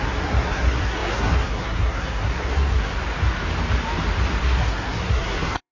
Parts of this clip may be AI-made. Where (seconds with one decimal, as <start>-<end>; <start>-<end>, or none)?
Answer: 0.0-2.9; 4.4-5.7